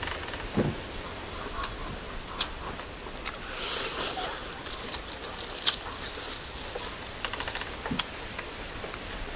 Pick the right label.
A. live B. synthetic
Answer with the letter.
B